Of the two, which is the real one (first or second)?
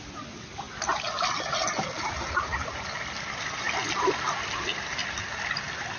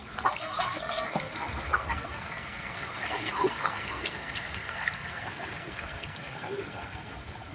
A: first